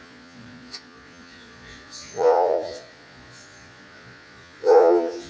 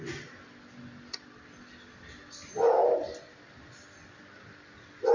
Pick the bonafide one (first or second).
second